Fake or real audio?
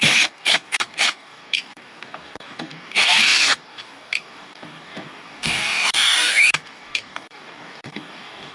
fake